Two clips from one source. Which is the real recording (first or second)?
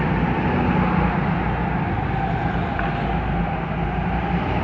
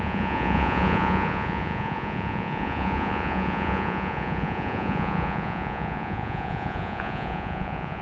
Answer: first